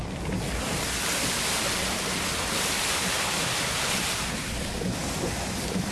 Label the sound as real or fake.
real